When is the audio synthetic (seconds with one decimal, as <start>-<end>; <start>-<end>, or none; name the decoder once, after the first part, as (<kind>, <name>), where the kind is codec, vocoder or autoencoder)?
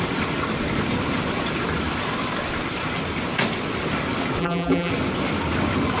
4.4-4.9 (vocoder, BigVGAN v2)